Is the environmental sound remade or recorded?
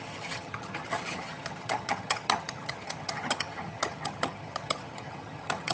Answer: remade